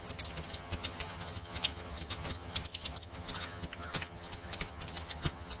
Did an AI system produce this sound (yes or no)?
yes